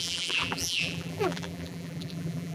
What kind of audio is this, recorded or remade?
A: remade